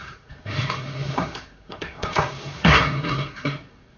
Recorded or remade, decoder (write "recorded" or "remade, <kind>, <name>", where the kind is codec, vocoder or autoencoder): remade, codec, SNAC